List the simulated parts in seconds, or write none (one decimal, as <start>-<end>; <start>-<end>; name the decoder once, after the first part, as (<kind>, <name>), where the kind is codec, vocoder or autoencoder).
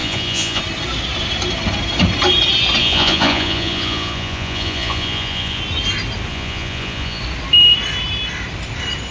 0.0-0.6 (vocoder, Vocos); 2.8-5.6; 6.3-7.2